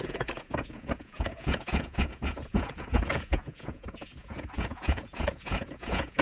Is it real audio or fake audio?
fake